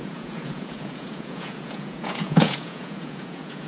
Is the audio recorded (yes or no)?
no